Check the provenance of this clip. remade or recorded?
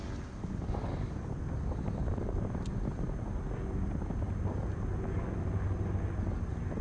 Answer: recorded